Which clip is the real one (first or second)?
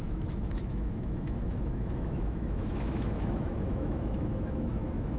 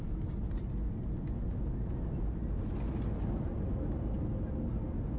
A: second